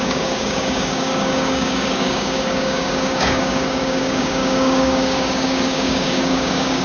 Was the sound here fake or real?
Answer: fake